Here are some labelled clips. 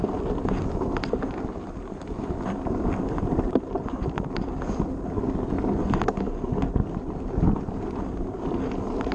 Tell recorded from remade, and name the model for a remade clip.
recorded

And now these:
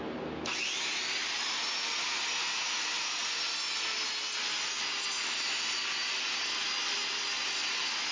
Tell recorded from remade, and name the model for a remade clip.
recorded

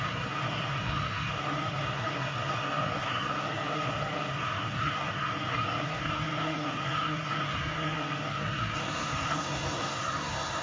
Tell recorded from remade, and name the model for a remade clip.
remade, codec, SNAC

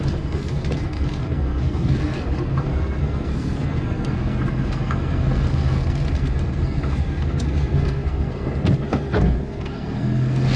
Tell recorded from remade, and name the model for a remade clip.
remade, codec, SNAC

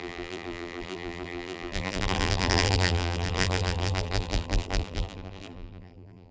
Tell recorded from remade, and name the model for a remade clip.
remade, vocoder, BigVGAN v2